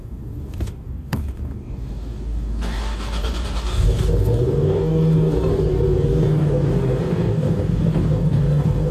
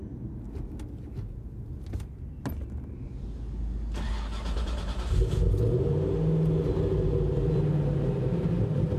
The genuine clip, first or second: second